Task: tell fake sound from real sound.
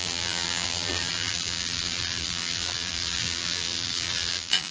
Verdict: fake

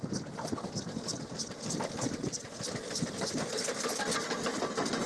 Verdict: real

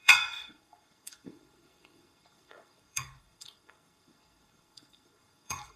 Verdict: fake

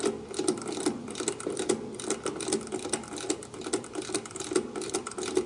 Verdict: real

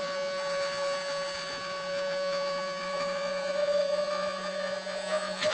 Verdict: fake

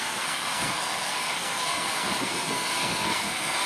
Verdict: fake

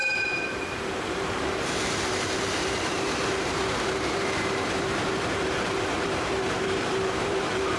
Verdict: fake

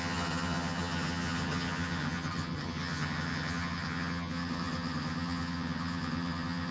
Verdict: fake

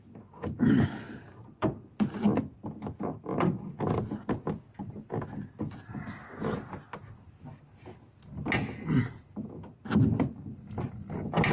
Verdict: real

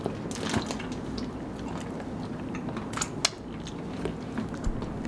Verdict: real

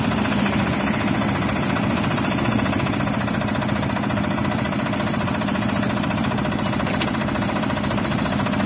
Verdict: fake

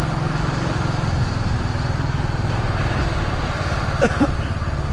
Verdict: real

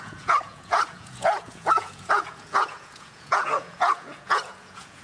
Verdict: fake